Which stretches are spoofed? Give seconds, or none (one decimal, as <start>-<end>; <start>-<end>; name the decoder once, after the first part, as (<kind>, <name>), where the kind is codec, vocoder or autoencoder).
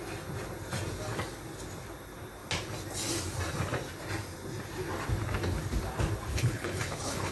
6.3-7.3 (codec, HILCodec)